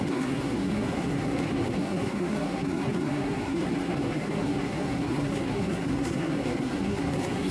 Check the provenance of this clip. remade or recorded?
remade